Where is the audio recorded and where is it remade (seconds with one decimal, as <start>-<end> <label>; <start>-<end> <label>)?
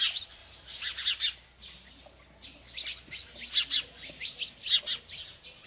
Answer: 0.0-0.4 recorded; 0.4-1.0 remade; 1.0-5.7 recorded